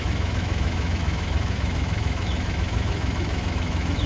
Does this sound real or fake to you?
fake